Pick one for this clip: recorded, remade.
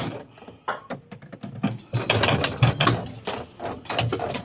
recorded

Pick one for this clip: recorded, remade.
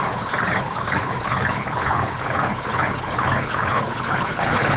remade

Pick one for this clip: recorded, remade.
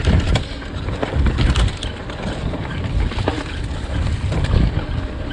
recorded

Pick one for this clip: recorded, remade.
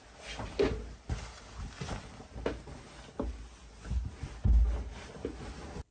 recorded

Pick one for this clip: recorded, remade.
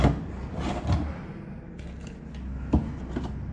recorded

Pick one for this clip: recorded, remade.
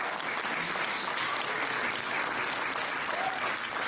recorded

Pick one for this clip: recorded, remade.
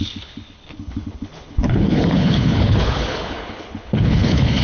remade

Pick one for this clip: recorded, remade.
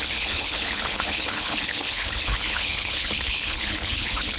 remade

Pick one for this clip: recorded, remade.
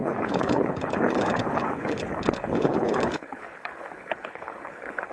remade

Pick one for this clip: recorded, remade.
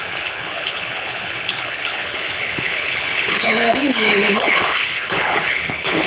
remade